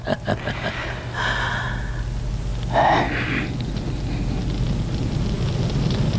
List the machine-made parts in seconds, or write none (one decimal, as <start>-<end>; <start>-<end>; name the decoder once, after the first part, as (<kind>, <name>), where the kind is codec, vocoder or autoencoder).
none